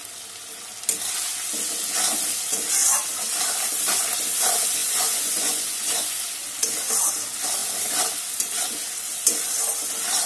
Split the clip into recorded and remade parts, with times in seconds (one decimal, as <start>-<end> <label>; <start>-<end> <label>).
0.0-4.8 recorded; 4.8-6.3 remade; 6.3-10.3 recorded